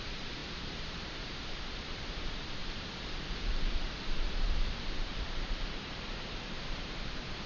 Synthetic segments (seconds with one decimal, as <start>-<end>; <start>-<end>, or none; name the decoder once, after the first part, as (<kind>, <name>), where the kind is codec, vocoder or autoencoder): 0.0-7.5 (vocoder, BigVGAN v2)